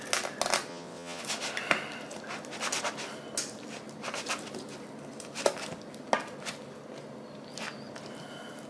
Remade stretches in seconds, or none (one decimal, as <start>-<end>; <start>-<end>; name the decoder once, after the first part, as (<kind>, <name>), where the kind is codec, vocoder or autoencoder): 0.7-1.2 (vocoder, WaveNeXt)